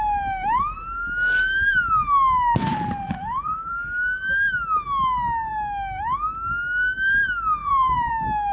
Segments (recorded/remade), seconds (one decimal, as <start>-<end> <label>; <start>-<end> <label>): 0.0-2.7 recorded; 2.7-3.7 remade; 3.7-7.6 recorded; 7.6-8.1 remade; 8.1-8.5 recorded